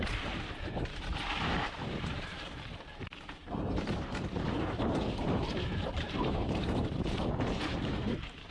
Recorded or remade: remade